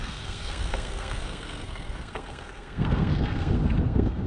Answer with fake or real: fake